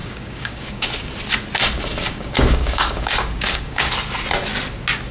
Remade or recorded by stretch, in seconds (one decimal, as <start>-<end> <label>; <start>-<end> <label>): 0.0-0.9 remade; 0.9-1.9 recorded; 1.9-3.9 remade; 3.9-5.1 recorded